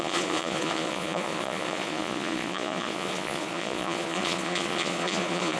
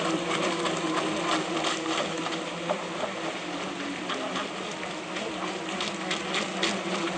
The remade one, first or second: first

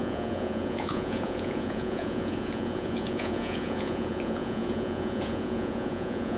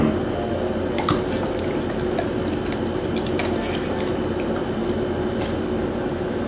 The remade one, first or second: first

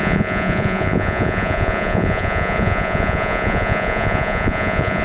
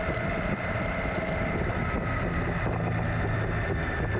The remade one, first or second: first